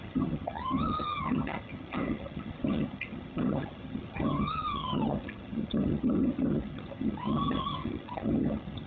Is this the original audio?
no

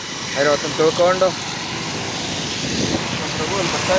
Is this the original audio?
yes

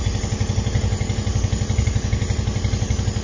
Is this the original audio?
yes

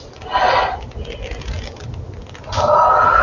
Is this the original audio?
yes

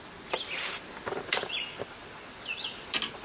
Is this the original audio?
yes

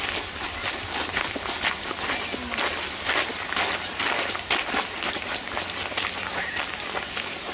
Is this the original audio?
yes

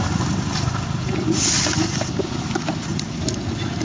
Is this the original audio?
yes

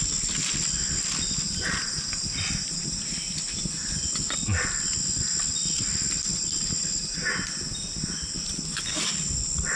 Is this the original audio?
yes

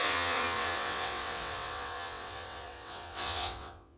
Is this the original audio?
no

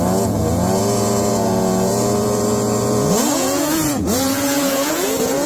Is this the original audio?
no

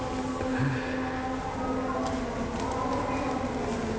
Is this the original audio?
yes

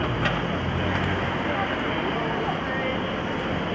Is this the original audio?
yes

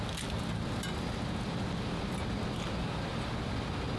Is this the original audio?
yes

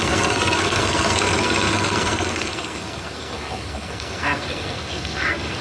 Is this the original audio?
no